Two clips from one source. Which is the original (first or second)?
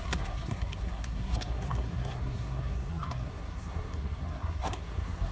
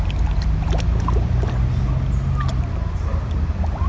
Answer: second